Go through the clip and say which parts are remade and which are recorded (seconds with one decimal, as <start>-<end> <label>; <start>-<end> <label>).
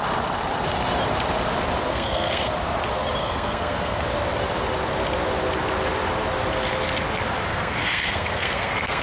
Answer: 0.0-1.9 recorded; 1.9-2.5 remade; 2.5-3.2 recorded; 3.2-4.0 remade; 4.0-7.5 recorded; 7.5-9.0 remade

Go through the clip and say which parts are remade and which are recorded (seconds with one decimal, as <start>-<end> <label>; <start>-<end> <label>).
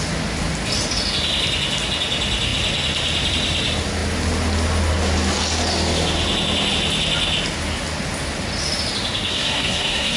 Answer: 0.0-9.3 recorded; 9.3-10.2 remade